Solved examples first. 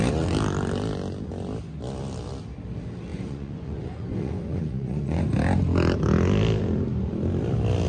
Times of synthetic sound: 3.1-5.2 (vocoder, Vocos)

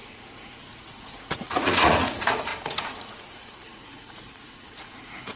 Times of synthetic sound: 0.0-5.4 (vocoder, Vocos)

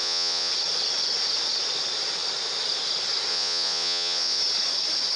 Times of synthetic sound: 0.0-0.5 (vocoder, Vocos); 3.3-4.4

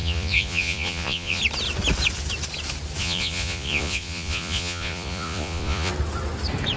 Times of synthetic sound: 0.0-1.4 (vocoder, Vocos); 3.0-5.9

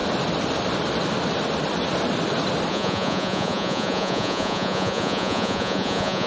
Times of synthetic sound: 2.7-6.3 (vocoder, Vocos)